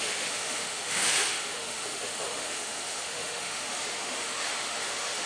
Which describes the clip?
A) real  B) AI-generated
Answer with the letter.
B